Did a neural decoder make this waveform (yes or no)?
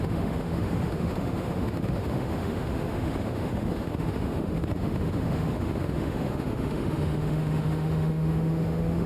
yes